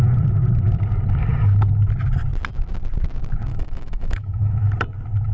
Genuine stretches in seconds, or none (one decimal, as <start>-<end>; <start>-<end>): 0.0-3.5; 4.7-5.3